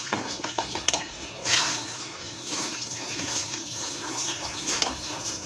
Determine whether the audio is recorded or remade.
remade